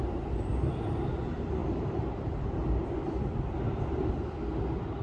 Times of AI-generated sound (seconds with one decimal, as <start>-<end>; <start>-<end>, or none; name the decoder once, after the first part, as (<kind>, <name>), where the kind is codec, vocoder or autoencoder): 1.6-4.1 (vocoder, BigVGAN v2)